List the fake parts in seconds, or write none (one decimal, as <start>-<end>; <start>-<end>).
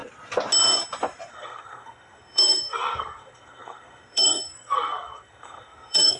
1.3-6.2